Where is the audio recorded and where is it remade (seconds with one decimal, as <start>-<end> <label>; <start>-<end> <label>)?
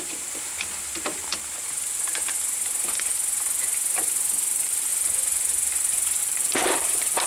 0.0-1.3 remade; 1.3-4.5 recorded; 4.5-4.9 remade; 4.9-6.2 recorded; 6.2-7.3 remade